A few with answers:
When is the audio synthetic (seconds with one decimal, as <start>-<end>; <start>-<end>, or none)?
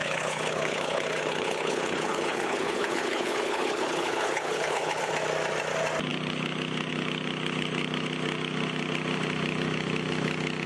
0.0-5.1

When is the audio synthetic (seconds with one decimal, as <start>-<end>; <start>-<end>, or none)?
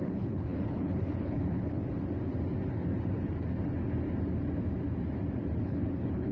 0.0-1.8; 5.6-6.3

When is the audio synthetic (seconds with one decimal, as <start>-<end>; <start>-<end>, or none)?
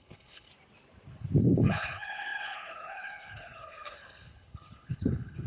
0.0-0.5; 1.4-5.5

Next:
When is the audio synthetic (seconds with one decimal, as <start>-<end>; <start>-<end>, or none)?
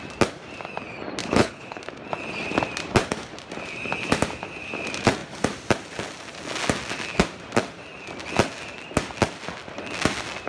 1.2-1.8